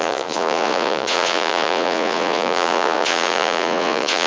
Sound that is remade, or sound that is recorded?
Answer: remade